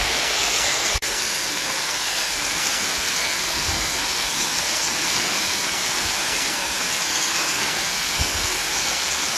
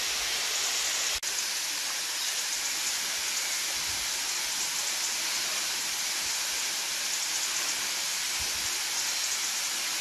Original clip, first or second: second